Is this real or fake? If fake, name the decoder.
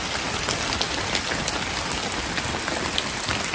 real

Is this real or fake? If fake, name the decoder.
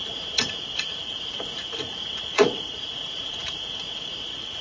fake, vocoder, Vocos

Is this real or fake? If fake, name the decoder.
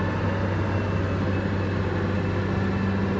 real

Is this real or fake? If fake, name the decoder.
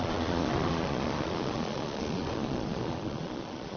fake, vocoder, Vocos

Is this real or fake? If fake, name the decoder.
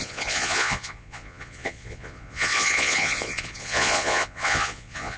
fake, vocoder, Vocos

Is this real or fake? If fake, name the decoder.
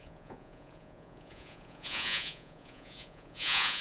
fake, vocoder, Vocos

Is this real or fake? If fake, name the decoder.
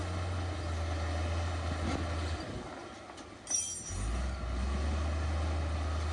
real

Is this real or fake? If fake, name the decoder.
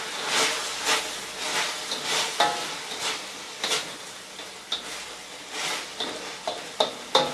real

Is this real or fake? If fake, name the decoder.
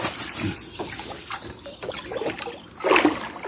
real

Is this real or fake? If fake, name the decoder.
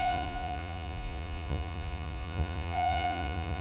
fake, vocoder, Vocos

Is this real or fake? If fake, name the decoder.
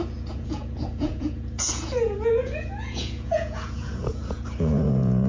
fake, vocoder, Vocos